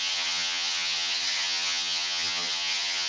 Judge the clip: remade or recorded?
remade